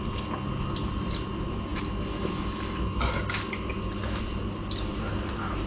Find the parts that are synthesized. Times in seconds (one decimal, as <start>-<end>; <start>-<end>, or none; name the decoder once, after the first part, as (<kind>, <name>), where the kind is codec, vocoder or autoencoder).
none